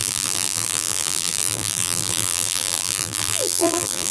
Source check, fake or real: fake